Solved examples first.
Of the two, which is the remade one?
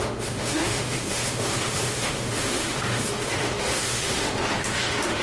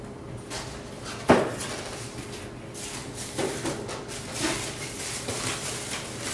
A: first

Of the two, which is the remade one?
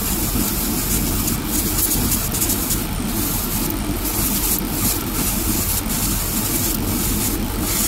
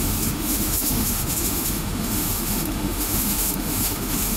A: second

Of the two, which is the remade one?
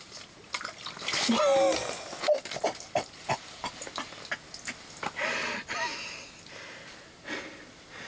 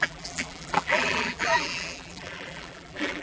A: second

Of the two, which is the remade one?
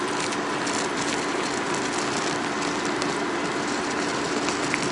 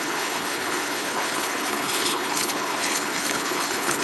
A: second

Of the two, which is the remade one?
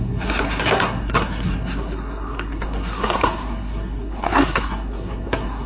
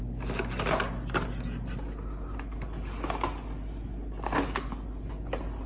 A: first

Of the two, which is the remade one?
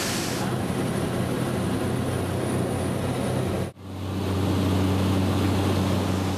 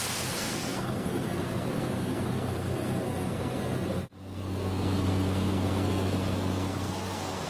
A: second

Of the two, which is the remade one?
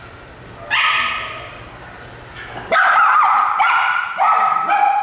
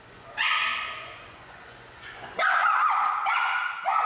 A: second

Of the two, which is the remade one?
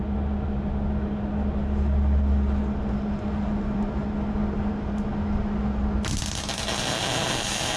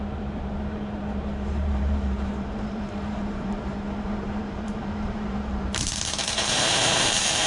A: second